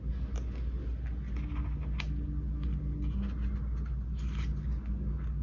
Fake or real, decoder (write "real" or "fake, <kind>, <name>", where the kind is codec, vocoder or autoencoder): real